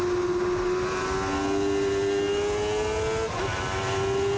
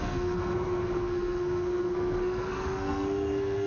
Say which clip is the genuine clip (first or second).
first